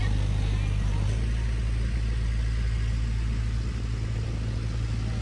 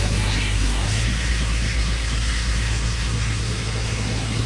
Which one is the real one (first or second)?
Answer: first